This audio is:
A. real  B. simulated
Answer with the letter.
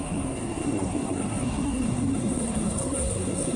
B